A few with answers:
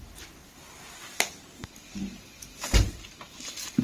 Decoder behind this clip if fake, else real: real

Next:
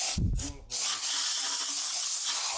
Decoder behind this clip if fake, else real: real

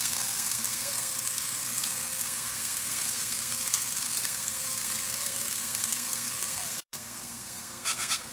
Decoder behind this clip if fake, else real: fake, codec, SNAC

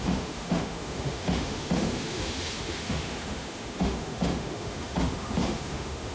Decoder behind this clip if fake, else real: fake, autoencoder, DAC-VAE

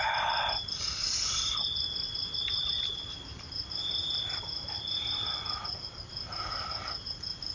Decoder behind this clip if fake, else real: real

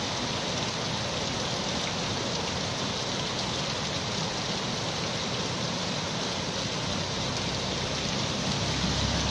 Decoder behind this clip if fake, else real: real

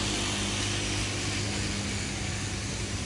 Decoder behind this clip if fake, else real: real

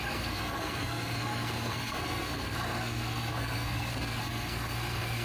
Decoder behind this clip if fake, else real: fake, codec, SNAC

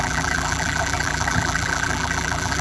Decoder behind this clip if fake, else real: fake, vocoder, BigVGAN v2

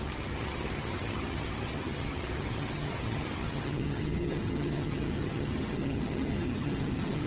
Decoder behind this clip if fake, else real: fake, vocoder, HiFi-GAN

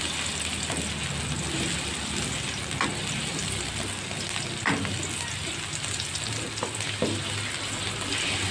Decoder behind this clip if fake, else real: real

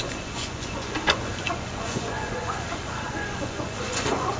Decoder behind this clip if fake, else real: fake, vocoder, Vocos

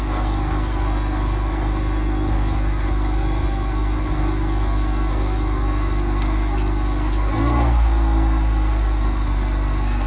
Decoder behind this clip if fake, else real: fake, codec, SNAC